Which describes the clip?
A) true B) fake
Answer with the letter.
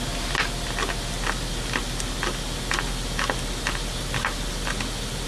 A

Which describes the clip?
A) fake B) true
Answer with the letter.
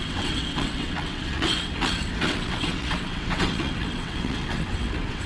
A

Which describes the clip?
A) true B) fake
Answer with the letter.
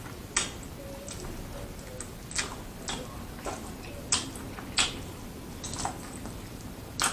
A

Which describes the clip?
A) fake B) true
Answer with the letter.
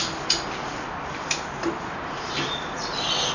B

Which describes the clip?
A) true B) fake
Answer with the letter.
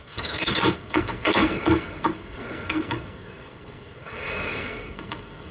B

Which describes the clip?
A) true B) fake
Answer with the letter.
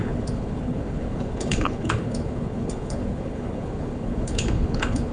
B